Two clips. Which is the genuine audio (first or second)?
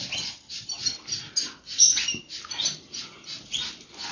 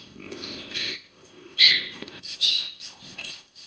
first